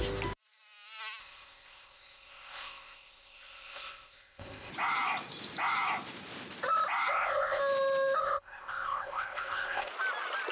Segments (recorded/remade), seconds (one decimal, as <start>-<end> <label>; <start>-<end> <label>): 0.0-1.2 recorded; 1.2-4.7 remade; 4.7-7.1 recorded; 7.1-7.6 remade; 7.6-8.2 recorded; 8.2-9.9 remade; 9.9-10.5 recorded